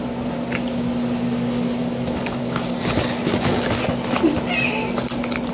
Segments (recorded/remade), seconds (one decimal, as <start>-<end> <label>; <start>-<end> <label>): 0.0-1.8 recorded; 1.8-2.6 remade; 2.6-3.3 recorded; 3.3-3.8 remade; 3.8-5.5 recorded